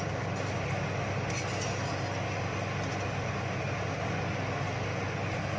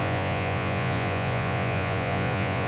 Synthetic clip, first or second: second